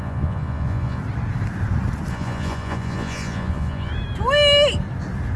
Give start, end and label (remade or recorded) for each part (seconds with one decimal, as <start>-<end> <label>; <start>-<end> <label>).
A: 0.0-1.0 remade; 1.0-2.1 recorded; 2.1-3.9 remade; 3.9-5.4 recorded